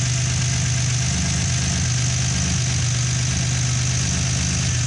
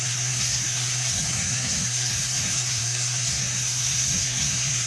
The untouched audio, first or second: first